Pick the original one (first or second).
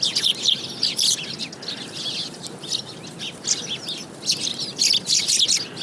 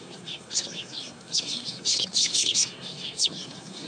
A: first